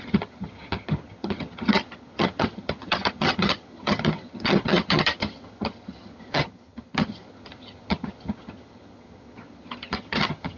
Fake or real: fake